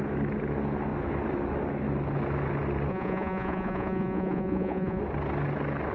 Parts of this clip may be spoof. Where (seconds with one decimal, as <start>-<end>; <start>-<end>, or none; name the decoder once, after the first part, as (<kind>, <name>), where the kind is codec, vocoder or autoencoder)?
2.9-5.0 (vocoder, Vocos)

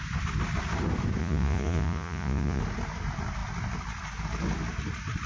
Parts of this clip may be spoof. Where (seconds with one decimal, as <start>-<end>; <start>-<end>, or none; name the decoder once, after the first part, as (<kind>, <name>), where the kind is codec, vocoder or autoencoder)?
1.2-2.6 (vocoder, Vocos)

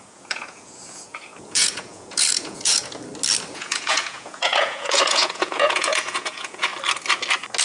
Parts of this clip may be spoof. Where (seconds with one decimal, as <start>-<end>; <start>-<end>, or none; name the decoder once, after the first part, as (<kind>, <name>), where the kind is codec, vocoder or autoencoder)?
0.0-2.8 (vocoder, Vocos); 3.5-6.7

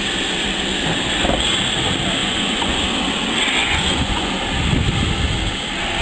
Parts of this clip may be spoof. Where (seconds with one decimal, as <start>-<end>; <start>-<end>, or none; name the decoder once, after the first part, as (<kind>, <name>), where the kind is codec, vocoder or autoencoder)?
2.2-2.8 (vocoder, Vocos); 3.6-4.3

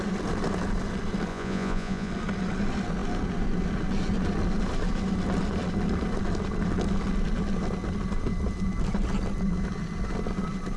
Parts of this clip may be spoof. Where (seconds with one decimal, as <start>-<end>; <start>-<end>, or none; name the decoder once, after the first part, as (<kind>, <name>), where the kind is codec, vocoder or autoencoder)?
1.3-2.1 (vocoder, Vocos)

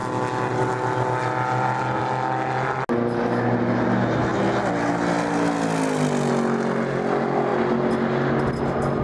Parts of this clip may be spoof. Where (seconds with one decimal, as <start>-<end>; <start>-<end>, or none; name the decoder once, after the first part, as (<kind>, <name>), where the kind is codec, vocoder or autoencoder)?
none